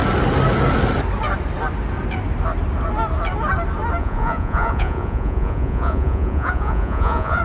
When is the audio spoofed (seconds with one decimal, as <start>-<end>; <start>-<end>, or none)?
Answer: 4.0-7.4